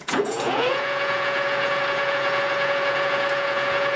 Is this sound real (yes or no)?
no